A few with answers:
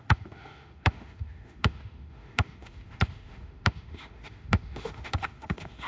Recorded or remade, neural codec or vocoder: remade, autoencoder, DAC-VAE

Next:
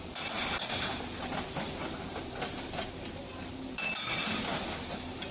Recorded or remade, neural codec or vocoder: recorded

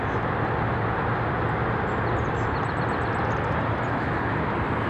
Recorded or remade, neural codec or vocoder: recorded